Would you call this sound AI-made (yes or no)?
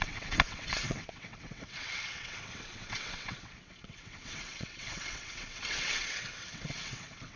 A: yes